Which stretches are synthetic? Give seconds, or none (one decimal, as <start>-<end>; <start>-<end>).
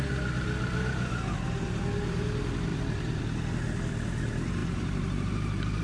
2.7-3.2; 4.6-5.8